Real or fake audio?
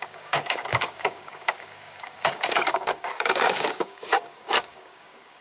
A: fake